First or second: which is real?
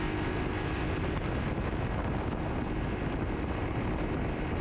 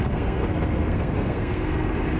first